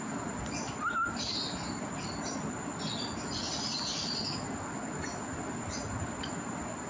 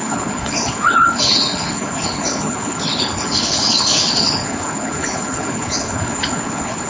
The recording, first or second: first